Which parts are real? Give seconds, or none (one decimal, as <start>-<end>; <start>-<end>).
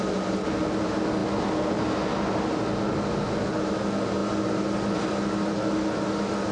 0.0-6.5